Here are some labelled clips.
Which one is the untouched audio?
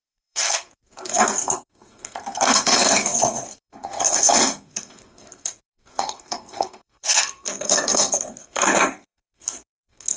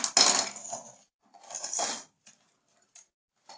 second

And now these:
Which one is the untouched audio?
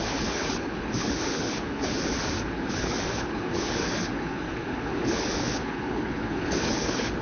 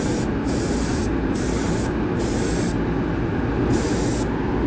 second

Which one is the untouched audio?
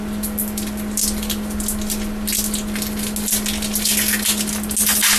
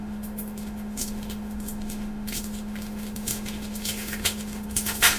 first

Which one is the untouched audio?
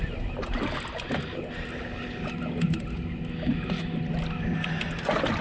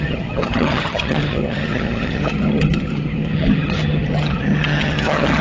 first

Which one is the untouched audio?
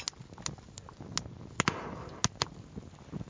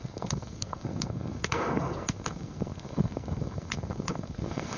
first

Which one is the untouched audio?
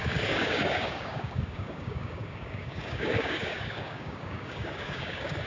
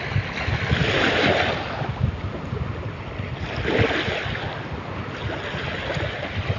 second